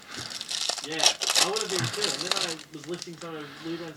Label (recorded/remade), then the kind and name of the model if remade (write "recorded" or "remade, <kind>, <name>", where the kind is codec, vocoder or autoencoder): recorded